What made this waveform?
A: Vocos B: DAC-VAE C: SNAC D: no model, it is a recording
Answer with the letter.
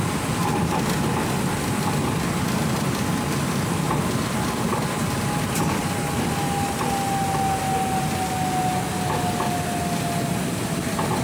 D